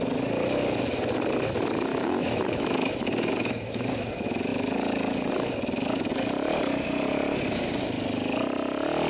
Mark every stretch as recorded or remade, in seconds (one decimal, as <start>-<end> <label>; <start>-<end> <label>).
0.0-1.9 recorded; 1.9-4.1 remade; 4.1-9.1 recorded